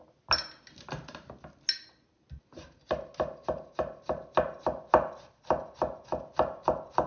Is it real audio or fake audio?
real